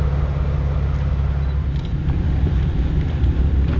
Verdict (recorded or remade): recorded